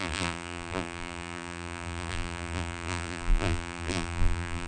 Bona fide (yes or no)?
no